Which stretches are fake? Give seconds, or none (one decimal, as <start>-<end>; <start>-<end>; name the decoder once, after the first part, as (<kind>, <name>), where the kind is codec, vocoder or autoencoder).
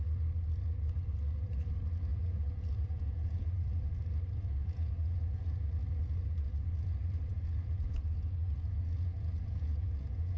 2.1-3.5 (vocoder, Vocos); 4.6-5.4; 7.3-10.4